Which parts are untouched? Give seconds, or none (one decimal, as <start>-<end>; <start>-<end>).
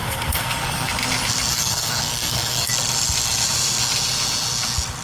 0.9-1.5; 2.7-5.0